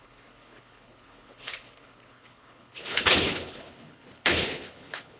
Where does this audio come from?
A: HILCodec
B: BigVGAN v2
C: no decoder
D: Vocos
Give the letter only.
A